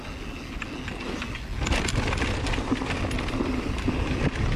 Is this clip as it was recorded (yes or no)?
yes